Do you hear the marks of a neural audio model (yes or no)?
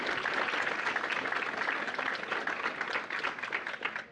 no